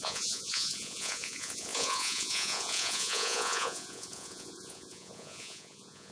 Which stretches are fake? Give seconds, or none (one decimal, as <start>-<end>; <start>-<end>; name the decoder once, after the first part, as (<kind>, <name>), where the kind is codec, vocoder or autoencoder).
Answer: 0.0-6.1 (vocoder, Vocos)